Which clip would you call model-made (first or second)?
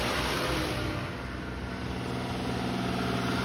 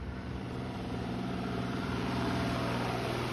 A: second